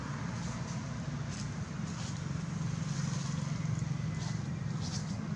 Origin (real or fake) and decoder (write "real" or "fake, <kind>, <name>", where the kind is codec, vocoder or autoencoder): real